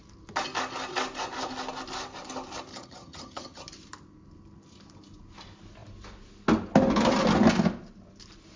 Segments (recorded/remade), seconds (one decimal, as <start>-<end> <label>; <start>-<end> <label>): 0.0-2.7 recorded; 2.7-3.6 remade; 3.6-8.6 recorded